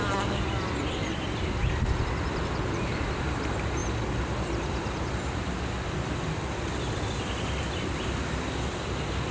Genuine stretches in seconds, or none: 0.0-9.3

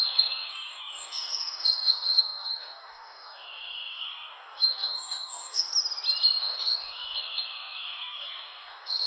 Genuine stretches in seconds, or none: 5.7-6.4

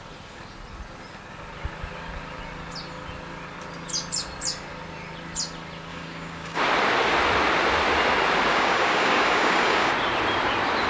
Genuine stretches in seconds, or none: 0.0-5.9; 6.6-8.5; 9.9-10.9

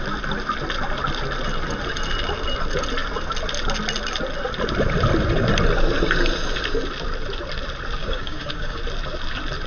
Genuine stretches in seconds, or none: 0.0-8.0; 8.8-9.7